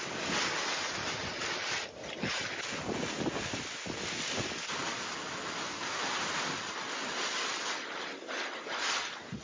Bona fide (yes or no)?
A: yes